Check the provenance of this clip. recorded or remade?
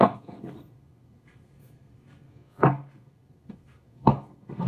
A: remade